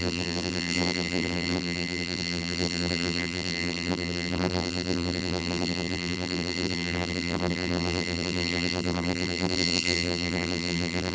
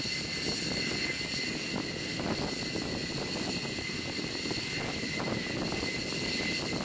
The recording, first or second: second